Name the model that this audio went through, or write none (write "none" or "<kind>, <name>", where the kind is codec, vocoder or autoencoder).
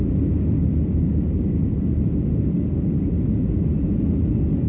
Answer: none